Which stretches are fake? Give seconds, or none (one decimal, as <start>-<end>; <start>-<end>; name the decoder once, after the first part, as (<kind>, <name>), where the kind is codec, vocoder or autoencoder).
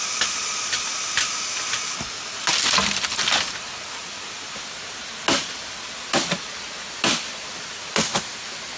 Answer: none